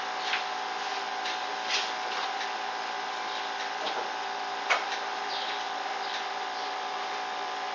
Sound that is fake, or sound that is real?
fake